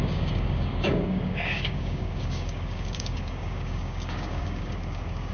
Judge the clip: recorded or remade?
remade